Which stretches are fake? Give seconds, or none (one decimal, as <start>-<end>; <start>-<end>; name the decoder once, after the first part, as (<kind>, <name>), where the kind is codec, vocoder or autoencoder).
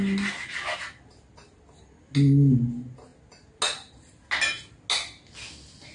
none